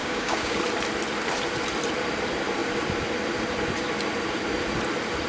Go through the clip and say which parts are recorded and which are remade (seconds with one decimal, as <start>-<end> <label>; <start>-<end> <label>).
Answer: 0.0-0.6 remade; 0.6-5.3 recorded